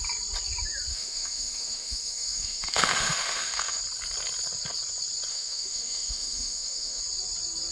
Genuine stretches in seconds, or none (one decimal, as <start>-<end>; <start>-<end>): 0.0-0.9; 3.8-5.3; 7.0-7.7